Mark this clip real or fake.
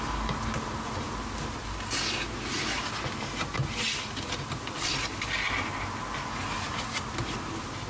real